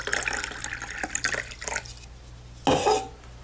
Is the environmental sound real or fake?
real